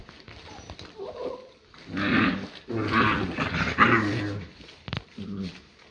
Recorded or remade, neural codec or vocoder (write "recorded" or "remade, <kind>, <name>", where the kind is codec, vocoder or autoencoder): remade, vocoder, BigVGAN v2